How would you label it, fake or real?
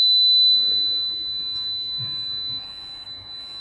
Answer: fake